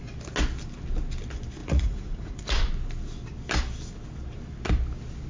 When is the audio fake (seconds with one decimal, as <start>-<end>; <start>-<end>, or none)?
1.6-2.7

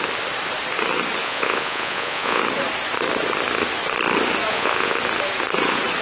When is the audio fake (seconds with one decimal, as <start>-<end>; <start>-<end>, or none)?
1.2-2.4; 4.5-5.0

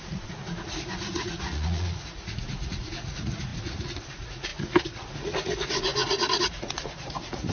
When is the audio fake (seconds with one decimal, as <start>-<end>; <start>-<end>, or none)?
0.0-7.5

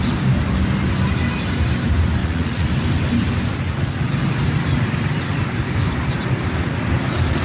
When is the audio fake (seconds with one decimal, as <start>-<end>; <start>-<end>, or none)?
2.2-2.7